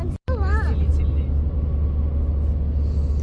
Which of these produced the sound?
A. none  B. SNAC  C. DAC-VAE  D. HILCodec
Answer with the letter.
A